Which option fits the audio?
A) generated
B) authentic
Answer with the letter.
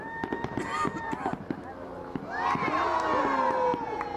B